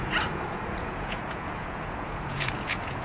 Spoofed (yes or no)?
yes